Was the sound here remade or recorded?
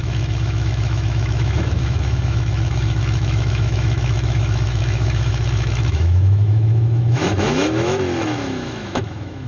remade